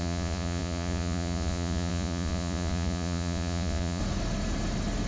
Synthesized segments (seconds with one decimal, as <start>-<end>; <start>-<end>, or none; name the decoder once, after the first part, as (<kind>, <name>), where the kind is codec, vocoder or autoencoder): 0.0-4.0 (vocoder, Vocos)